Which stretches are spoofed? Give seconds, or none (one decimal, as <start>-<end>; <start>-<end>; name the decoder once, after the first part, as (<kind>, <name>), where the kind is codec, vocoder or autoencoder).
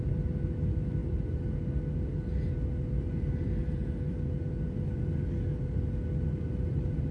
none